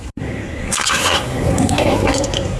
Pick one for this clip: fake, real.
fake